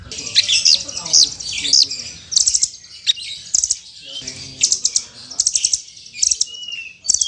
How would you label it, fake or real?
real